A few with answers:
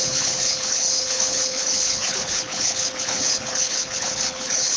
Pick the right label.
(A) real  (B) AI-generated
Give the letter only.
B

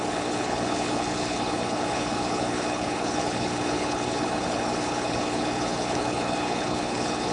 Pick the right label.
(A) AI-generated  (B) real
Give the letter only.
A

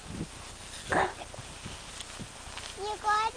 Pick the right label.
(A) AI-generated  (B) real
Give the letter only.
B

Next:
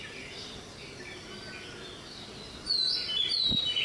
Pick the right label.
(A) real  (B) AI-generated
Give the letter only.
A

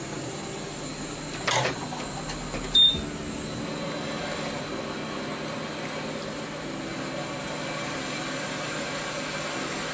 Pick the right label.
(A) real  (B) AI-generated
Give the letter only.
A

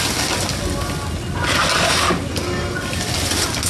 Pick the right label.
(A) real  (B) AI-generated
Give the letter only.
A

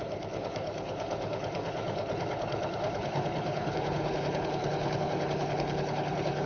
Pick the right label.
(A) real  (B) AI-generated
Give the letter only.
B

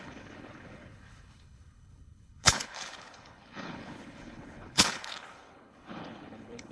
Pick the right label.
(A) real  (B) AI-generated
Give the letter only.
B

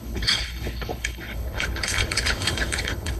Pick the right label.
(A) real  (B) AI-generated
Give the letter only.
B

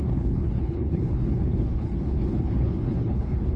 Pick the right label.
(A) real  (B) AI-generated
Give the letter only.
B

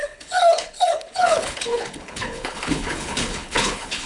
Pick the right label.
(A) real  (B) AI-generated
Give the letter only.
B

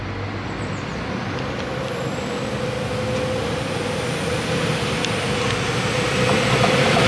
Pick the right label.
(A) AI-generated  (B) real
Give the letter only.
B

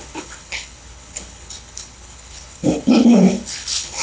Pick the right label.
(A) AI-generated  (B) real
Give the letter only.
A